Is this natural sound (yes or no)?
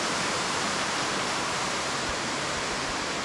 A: no